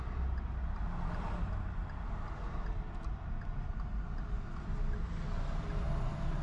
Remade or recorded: recorded